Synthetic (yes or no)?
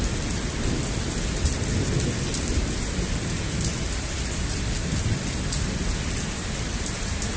no